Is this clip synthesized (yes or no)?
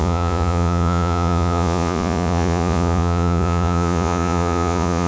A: yes